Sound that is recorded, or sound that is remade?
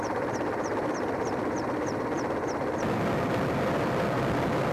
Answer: recorded